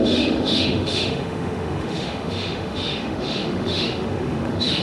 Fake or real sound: fake